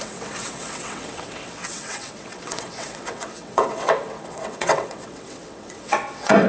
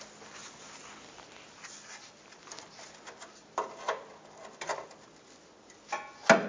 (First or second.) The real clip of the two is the second